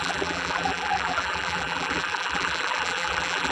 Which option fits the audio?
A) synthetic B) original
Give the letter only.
A